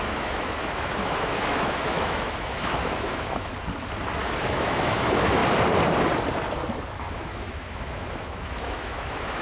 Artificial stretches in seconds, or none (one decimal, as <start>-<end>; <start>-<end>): 0.0-3.5; 4.2-5.4; 7.1-9.4